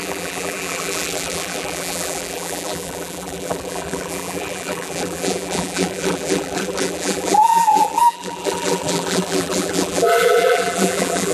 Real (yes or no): no